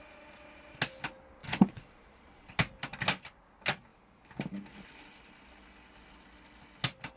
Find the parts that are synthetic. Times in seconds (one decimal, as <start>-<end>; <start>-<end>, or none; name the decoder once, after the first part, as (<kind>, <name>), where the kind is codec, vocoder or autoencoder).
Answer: 1.4-2.5 (vocoder, Vocos)